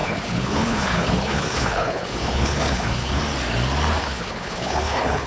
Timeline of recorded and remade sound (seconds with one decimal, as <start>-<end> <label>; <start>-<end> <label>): 0.0-3.2 remade; 3.2-4.0 recorded; 4.0-5.3 remade